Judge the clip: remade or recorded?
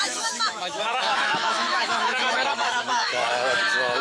remade